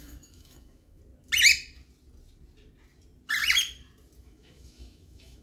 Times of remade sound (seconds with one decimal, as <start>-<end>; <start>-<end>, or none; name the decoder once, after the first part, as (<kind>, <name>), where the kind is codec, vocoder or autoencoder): 0.0-1.0 (autoencoder, DAC-VAE); 4.2-5.4